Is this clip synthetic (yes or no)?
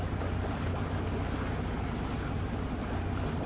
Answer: no